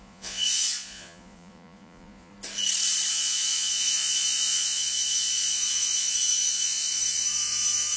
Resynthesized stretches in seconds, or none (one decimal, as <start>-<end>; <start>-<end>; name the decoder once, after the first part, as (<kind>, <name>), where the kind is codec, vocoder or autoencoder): 0.0-2.3 (vocoder, Vocos); 3.1-8.0